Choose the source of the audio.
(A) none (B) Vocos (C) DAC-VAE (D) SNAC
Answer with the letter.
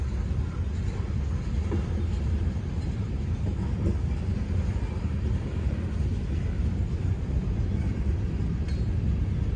A